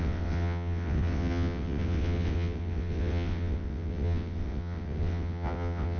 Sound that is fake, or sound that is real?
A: fake